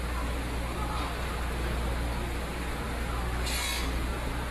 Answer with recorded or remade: recorded